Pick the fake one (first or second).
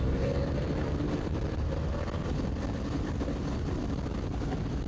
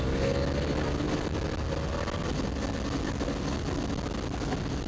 first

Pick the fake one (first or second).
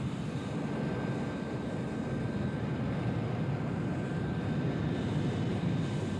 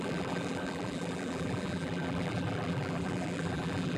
second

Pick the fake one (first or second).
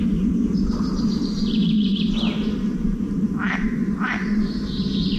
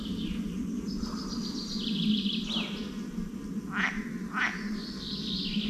first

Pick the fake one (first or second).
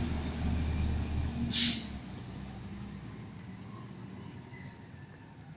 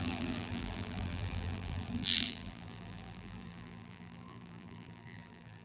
second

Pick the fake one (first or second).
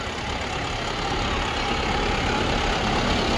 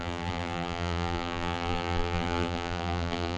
second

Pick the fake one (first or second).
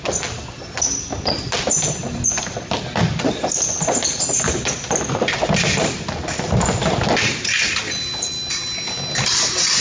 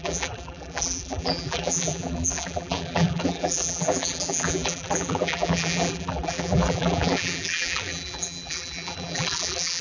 second